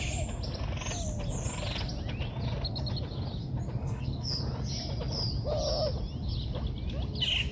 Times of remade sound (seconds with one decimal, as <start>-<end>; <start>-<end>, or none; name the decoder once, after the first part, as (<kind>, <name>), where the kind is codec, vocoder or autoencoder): 3.8-4.4 (codec, SNAC)